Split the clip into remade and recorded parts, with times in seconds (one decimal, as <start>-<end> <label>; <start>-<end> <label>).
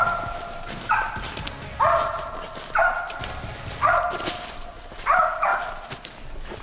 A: 0.0-6.6 recorded